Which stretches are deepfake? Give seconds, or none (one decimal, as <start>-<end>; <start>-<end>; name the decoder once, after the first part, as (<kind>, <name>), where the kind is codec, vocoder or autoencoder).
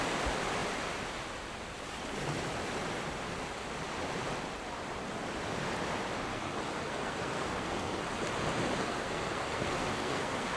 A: 6.3-8.0 (codec, SNAC); 8.8-10.6